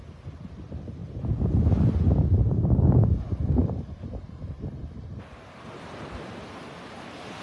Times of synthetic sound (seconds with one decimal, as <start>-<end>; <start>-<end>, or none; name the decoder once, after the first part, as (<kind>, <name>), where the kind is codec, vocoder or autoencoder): 3.6-7.0 (vocoder, BigVGAN v2)